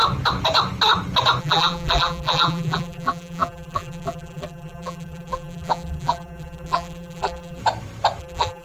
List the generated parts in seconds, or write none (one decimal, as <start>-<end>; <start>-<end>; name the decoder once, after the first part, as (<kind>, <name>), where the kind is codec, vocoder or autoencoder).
1.4-7.6 (vocoder, BigVGAN v2); 8.2-8.6